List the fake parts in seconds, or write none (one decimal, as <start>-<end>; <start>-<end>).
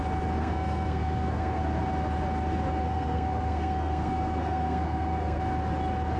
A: 0.4-1.6; 2.8-5.4